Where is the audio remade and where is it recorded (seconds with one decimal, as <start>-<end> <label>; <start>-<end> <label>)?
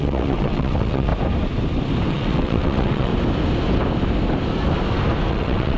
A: 0.0-1.1 remade; 1.1-2.1 recorded; 2.1-3.1 remade; 3.1-5.3 recorded; 5.3-5.8 remade